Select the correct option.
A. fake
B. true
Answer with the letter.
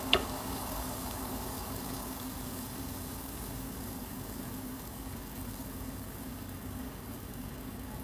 A